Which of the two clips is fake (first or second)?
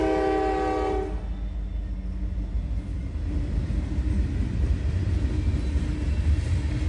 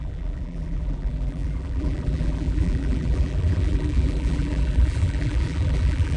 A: second